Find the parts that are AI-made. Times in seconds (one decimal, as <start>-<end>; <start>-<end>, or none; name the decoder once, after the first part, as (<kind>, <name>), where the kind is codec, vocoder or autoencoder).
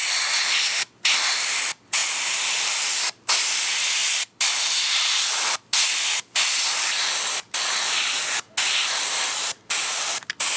none